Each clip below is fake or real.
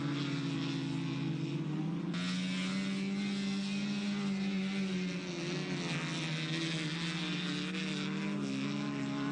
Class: real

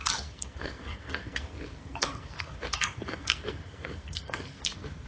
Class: fake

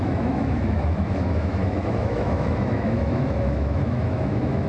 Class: fake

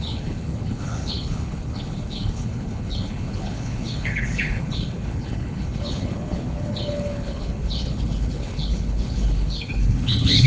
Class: fake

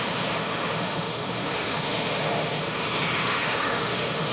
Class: fake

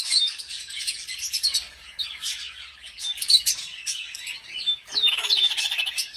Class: fake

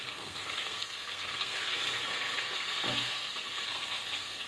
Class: fake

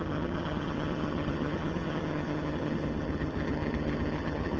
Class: fake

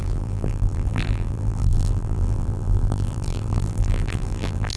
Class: fake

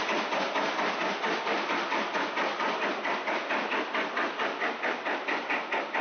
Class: real